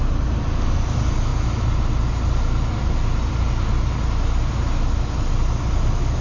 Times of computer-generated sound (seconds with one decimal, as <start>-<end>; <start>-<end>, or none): none